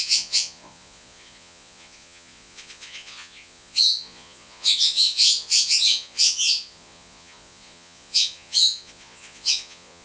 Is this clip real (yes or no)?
no